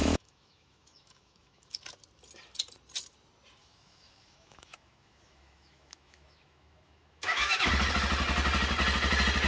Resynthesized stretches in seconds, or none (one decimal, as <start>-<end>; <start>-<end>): 0.0-1.8; 3.6-7.7